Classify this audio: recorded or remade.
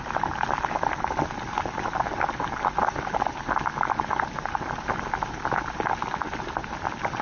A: recorded